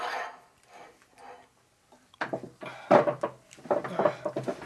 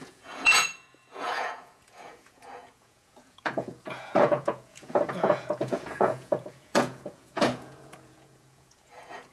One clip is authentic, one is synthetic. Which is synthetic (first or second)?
second